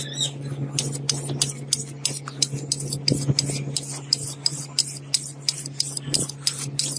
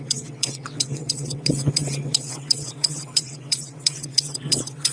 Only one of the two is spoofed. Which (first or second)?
second